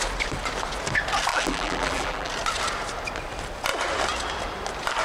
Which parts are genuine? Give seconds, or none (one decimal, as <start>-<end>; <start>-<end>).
0.0-1.3; 2.3-5.0